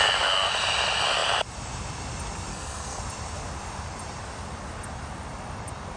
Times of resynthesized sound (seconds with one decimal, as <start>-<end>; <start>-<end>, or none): 2.5-3.0